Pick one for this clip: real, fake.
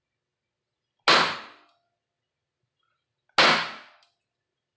real